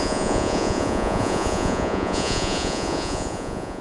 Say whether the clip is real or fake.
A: fake